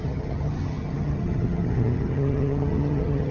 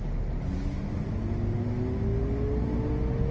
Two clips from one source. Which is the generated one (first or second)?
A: first